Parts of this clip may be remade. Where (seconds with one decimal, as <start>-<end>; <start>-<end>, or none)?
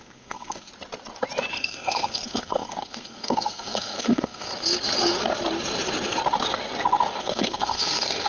0.0-0.7; 1.5-4.5; 7.2-8.3